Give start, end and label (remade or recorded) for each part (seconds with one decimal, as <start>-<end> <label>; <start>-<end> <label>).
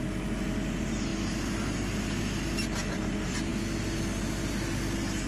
0.0-5.3 recorded